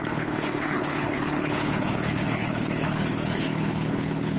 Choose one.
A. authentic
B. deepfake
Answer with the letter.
B